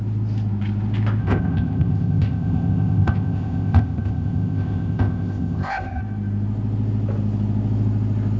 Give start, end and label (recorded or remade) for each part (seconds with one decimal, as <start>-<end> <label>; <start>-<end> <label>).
0.0-1.2 recorded; 1.2-6.0 remade; 6.0-8.4 recorded